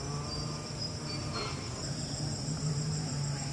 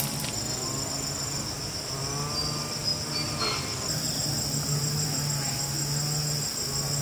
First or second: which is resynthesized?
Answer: first